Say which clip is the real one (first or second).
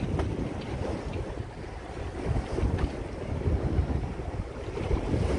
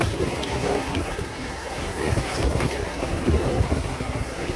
first